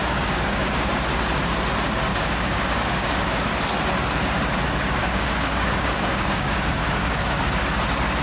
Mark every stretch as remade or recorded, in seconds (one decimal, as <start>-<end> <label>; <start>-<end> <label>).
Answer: 0.0-0.9 remade; 0.9-2.1 recorded; 2.1-3.4 remade; 3.4-5.0 recorded; 5.0-7.4 remade; 7.4-8.2 recorded